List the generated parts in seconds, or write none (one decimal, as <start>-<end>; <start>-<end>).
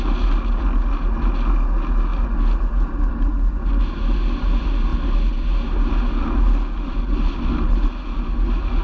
none